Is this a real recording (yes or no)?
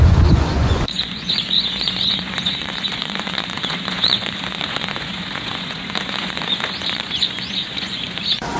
no